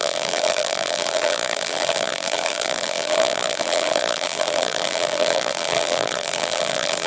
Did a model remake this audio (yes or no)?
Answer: yes